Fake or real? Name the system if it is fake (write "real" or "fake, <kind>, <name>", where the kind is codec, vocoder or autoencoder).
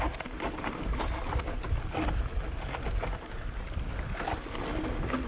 real